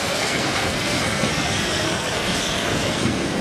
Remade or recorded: remade